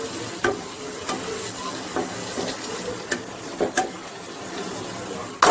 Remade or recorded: recorded